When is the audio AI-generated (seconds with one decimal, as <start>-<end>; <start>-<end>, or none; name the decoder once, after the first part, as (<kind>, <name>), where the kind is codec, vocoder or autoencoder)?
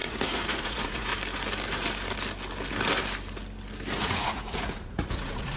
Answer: 0.0-1.1 (vocoder, Vocos); 4.0-5.6